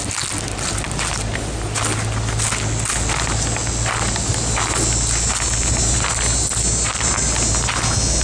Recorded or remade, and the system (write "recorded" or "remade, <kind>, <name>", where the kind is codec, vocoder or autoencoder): recorded